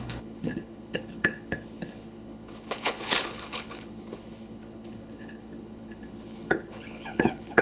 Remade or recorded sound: remade